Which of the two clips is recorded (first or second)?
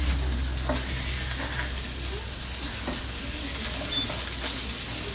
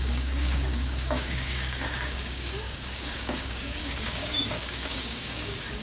first